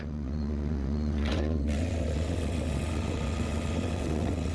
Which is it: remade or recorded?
remade